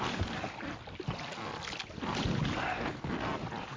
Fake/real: real